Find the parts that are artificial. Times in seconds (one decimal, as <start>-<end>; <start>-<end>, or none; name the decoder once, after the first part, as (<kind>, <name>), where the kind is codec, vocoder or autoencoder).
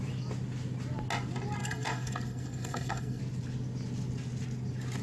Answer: 1.6-3.2 (codec, SNAC)